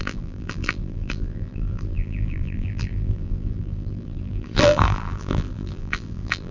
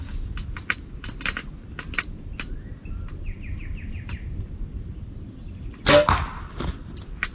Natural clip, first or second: second